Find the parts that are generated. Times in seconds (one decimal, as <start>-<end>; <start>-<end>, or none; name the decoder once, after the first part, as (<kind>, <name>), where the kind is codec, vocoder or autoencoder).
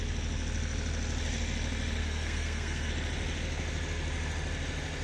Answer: 2.0-2.9 (codec, SNAC)